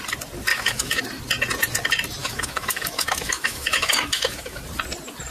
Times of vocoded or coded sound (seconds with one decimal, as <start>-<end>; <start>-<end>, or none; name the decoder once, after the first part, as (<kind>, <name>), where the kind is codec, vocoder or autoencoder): 0.5-1.0 (autoencoder, DAC-VAE); 2.2-4.6